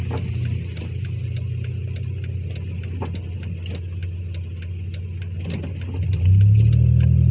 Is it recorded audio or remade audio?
recorded